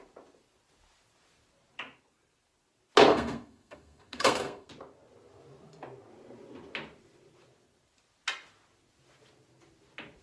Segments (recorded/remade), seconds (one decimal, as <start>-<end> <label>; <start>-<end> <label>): 0.0-3.1 recorded; 3.1-4.7 remade; 4.7-10.2 recorded